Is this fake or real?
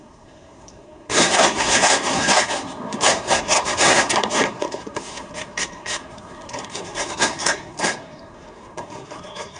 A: fake